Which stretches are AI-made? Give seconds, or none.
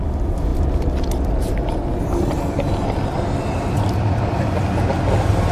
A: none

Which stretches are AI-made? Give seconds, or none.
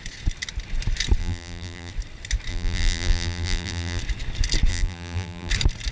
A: 1.2-1.9 (vocoder, BigVGAN v2); 2.5-4.0; 4.7-5.5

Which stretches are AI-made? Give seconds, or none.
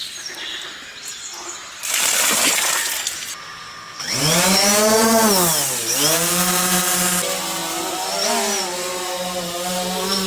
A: none